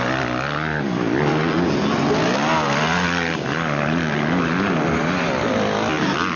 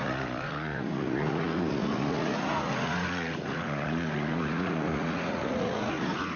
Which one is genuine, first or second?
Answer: first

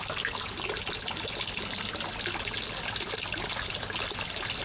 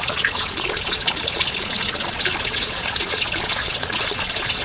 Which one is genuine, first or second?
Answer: first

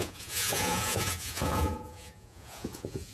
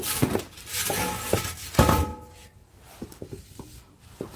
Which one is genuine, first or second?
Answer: second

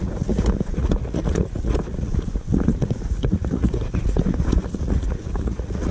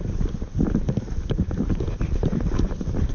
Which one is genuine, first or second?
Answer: second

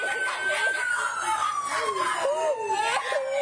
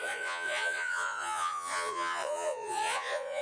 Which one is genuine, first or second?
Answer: first